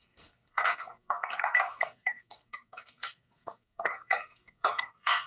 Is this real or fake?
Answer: fake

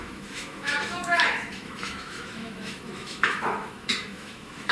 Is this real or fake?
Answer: fake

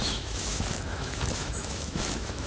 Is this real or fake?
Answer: fake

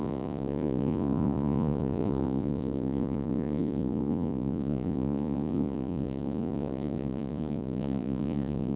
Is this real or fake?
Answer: fake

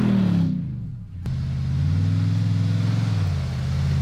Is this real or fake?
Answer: real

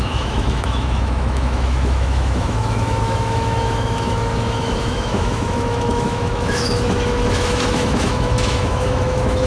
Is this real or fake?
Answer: fake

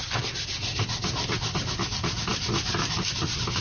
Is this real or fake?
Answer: real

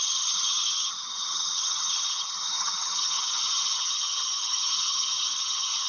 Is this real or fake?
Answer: fake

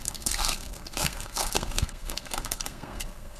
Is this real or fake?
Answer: fake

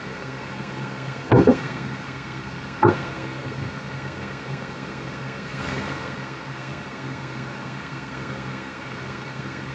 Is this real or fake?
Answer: fake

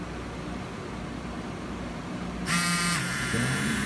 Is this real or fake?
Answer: fake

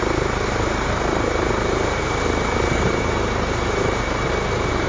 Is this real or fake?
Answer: fake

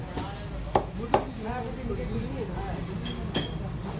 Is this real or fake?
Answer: real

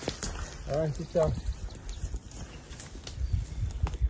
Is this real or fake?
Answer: real